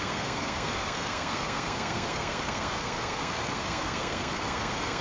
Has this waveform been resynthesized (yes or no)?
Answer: yes